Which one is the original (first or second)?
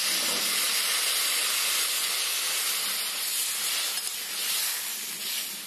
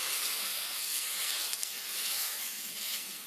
first